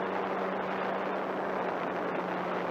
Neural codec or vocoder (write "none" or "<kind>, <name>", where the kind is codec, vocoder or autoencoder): none